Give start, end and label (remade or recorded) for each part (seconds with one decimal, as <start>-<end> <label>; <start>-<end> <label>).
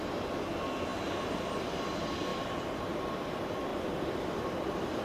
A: 0.0-2.3 recorded; 2.3-3.1 remade; 3.1-5.0 recorded